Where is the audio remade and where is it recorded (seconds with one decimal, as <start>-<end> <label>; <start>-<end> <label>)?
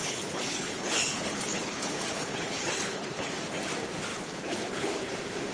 0.0-3.3 remade; 3.3-4.1 recorded; 4.1-5.0 remade; 5.0-5.5 recorded